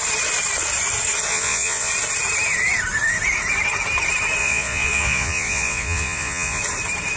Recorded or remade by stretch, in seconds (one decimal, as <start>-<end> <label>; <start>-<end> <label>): 0.0-1.3 recorded; 1.3-1.9 remade; 1.9-4.4 recorded; 4.4-6.6 remade; 6.6-7.2 recorded